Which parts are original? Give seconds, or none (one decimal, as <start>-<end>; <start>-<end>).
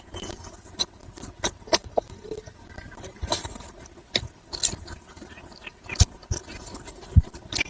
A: 0.0-7.7